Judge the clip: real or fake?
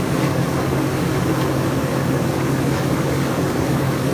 fake